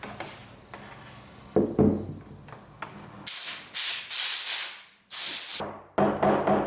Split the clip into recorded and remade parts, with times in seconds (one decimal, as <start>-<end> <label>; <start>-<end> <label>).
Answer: 0.0-6.7 recorded